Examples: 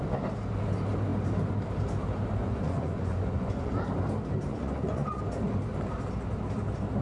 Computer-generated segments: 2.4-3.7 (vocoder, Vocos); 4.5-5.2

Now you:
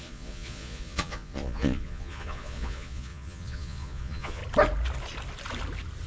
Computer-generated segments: 0.0-4.4 (vocoder, Vocos)

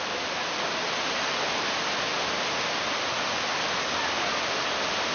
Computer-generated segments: none

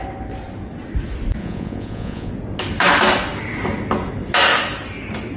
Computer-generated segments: 1.4-2.3 (vocoder, Vocos)